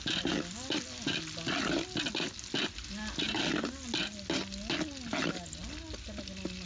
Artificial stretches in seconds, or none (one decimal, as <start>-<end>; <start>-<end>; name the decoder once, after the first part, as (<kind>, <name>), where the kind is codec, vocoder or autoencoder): none